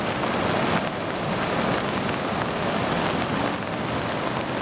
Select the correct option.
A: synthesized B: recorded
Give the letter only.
B